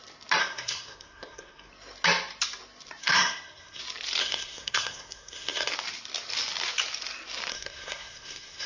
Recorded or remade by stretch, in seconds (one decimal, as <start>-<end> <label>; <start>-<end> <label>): 0.0-0.4 recorded; 0.4-1.7 remade; 1.7-3.0 recorded; 3.0-3.8 remade; 3.8-4.2 recorded; 4.2-5.7 remade; 5.7-7.5 recorded; 7.5-8.7 remade

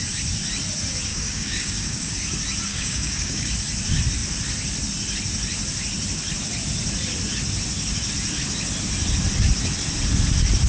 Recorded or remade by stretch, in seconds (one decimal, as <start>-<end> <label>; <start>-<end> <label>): 0.0-1.1 recorded; 1.1-2.1 remade; 2.1-2.7 recorded; 2.7-3.5 remade; 3.5-10.7 recorded

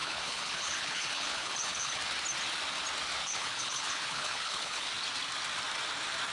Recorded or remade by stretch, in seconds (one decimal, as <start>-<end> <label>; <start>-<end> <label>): 0.0-2.0 remade; 2.0-3.2 recorded; 3.2-4.9 remade; 4.9-6.3 recorded